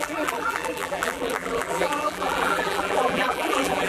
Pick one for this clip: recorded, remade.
remade